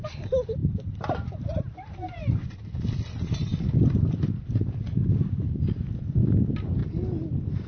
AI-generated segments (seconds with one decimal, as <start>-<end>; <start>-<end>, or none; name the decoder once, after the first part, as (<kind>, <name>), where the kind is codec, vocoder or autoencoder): 0.6-2.5 (vocoder, BigVGAN v2)